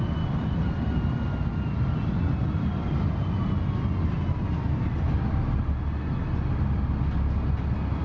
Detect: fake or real real